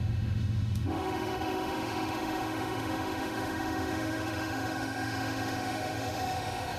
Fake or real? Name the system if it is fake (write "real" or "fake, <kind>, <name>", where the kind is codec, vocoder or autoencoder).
fake, autoencoder, DAC-VAE